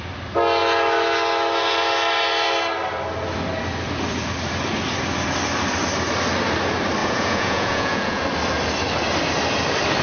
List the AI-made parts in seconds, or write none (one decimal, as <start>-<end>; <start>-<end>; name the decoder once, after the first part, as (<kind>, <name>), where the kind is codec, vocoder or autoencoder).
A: 7.0-8.2 (vocoder, Vocos)